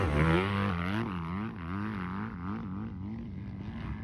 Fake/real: real